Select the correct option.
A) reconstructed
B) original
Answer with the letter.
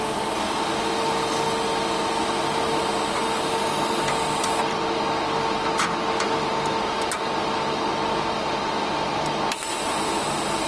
B